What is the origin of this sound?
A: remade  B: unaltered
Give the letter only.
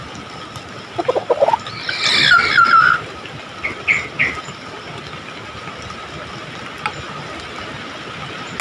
B